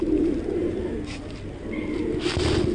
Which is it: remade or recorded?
recorded